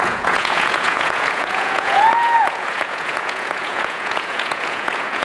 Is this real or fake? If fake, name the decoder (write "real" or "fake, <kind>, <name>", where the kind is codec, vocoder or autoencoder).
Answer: fake, vocoder, Vocos